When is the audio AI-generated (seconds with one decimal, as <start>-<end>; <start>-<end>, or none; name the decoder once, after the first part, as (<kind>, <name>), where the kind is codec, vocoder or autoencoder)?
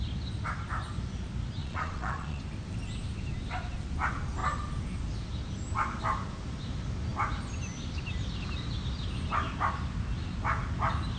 1.6-2.4 (vocoder, Vocos)